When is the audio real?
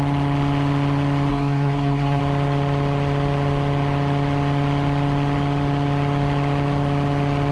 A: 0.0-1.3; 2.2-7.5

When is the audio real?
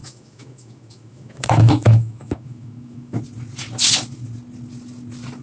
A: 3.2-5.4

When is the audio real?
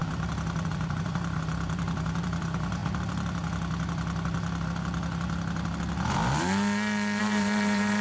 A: 2.8-7.2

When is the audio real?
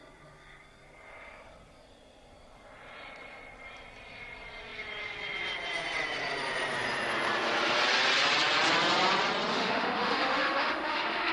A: 0.0-9.5